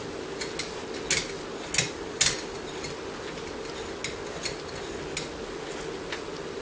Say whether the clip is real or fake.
real